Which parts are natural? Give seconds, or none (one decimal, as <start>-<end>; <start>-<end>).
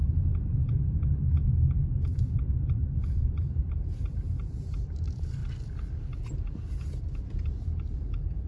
0.0-2.5; 5.4-7.4